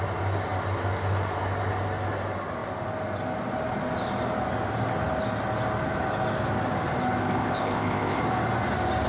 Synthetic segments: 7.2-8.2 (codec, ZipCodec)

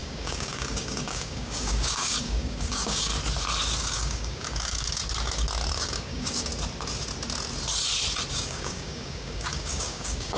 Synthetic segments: 0.0-3.1 (codec, DAC); 3.8-5.0; 5.7-6.5; 8.3-10.4

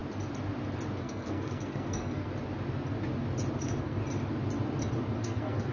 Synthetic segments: 1.0-2.3 (codec, SNAC); 3.6-4.0; 5.2-5.7

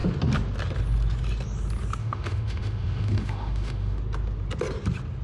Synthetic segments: 2.0-4.0 (autoencoder, DAC-VAE)

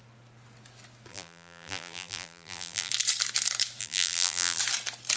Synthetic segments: 1.1-2.9 (vocoder, BigVGAN v2); 3.8-4.6

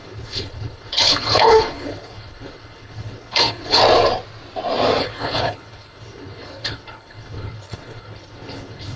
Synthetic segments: 0.0-3.8 (codec, HILCodec); 5.0-9.0